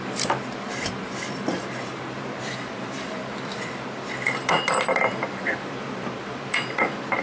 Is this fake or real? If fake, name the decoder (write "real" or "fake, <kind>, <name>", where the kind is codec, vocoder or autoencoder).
fake, vocoder, BigVGAN v2